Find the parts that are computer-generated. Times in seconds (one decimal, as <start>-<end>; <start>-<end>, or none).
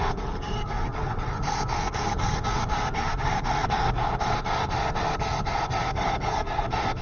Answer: 0.0-7.0